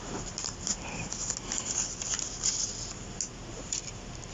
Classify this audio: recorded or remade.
recorded